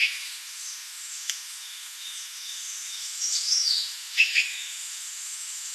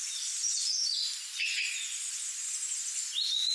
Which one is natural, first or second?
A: second